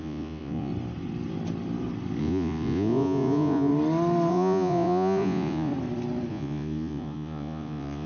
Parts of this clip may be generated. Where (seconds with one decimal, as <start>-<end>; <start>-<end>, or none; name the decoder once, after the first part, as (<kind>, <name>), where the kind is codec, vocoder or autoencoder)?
0.0-0.7 (vocoder, Vocos); 2.2-3.7; 4.3-5.7; 6.3-8.1